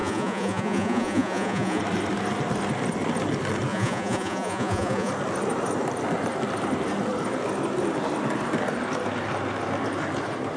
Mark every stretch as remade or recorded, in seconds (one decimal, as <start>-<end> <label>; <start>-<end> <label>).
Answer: 0.0-1.8 remade; 1.8-3.7 recorded; 3.7-5.1 remade; 5.1-10.6 recorded